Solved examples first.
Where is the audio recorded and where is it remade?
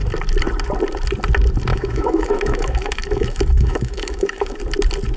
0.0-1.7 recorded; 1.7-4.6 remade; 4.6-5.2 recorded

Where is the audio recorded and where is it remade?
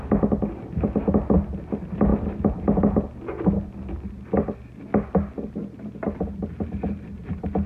0.0-7.7 recorded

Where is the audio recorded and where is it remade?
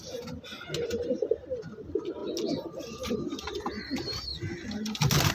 0.0-5.3 recorded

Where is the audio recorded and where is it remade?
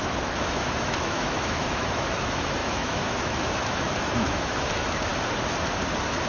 0.0-5.1 remade; 5.1-6.3 recorded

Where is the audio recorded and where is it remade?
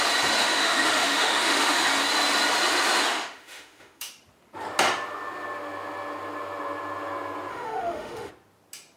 0.0-0.4 recorded; 0.4-1.9 remade; 1.9-3.1 recorded; 3.1-4.1 remade; 4.1-7.5 recorded; 7.5-8.3 remade; 8.3-9.0 recorded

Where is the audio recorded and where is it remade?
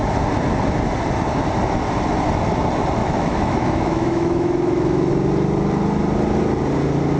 0.0-3.0 recorded; 3.0-5.1 remade; 5.1-7.2 recorded